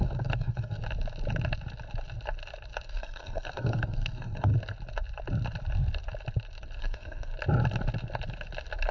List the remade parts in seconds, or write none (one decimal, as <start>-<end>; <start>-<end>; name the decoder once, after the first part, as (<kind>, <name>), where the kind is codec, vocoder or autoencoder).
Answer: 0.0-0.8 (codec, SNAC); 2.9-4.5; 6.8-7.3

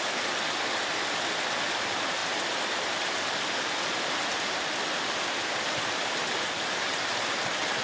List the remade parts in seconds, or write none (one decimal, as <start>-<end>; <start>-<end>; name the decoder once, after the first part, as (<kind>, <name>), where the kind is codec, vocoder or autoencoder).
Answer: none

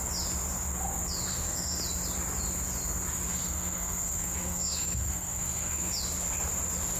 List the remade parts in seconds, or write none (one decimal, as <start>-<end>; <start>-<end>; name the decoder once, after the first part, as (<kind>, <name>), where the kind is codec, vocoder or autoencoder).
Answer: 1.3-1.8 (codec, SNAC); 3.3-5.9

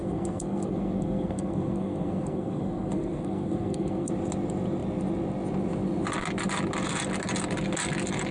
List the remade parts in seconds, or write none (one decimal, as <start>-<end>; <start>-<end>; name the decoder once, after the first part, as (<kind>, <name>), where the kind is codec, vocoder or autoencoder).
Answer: 0.0-4.1 (codec, SNAC)

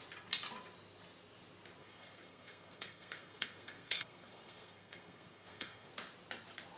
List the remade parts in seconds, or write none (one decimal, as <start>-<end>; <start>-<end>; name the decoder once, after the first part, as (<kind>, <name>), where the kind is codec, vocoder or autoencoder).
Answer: 1.8-5.9 (codec, SNAC)